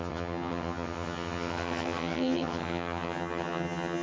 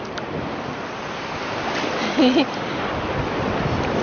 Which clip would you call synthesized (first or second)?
first